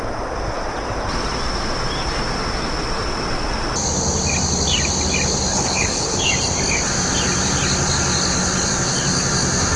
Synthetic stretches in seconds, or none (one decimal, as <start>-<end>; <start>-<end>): 5.5-6.2